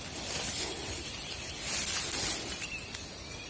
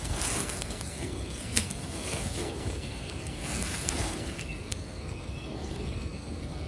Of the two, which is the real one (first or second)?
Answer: first